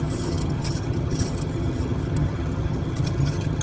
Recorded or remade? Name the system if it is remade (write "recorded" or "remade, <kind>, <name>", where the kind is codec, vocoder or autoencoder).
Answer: remade, vocoder, HiFi-GAN